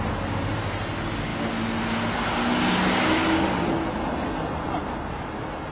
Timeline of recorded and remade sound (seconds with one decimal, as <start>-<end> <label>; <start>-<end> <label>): 0.0-5.7 recorded